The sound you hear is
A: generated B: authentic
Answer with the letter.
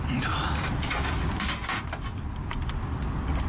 B